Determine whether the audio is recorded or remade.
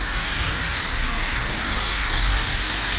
remade